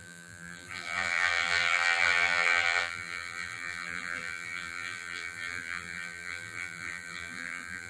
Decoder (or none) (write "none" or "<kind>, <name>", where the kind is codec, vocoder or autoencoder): vocoder, BigVGAN v2